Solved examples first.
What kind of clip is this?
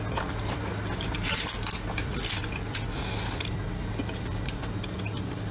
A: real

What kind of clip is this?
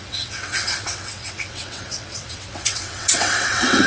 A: fake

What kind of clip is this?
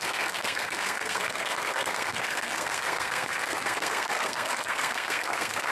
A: fake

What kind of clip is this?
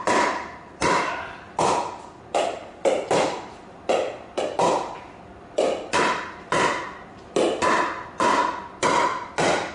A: real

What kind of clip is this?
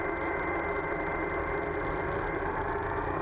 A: real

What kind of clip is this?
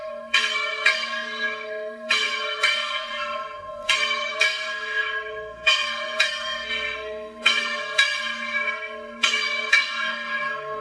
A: fake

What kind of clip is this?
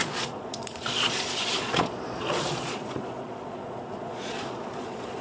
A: fake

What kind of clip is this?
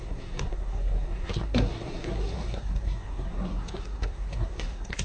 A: fake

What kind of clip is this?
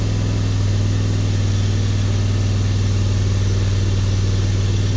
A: real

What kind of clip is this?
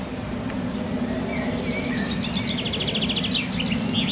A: real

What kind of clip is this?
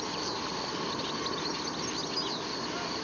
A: real